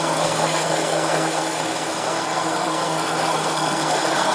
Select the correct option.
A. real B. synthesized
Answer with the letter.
B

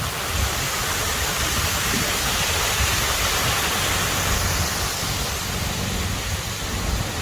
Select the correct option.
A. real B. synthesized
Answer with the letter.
A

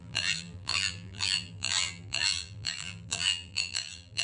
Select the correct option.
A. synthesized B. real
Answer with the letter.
A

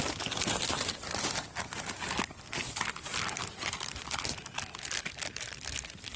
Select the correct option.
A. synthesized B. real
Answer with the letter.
B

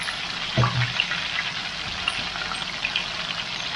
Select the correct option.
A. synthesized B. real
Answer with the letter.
B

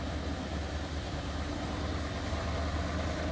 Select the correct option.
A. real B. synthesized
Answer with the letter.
B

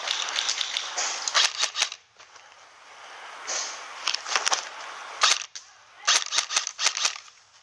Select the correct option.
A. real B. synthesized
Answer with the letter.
A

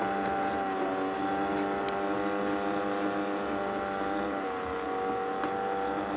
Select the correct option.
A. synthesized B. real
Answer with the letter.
B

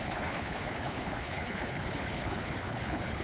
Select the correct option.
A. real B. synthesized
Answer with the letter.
B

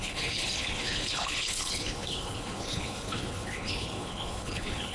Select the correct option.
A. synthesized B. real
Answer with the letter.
A